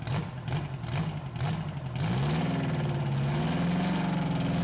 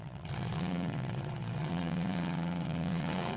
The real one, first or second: first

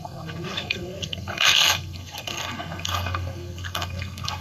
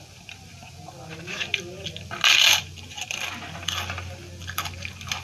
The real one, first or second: second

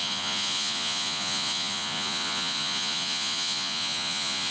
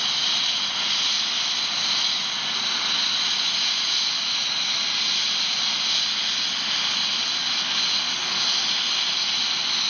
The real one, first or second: second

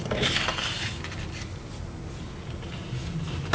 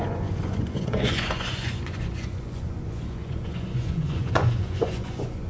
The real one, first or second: first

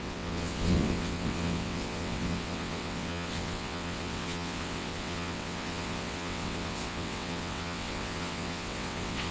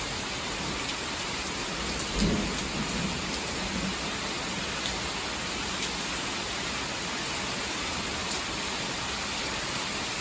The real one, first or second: second